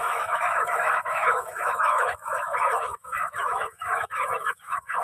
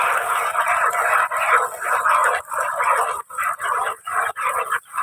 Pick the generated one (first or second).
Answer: first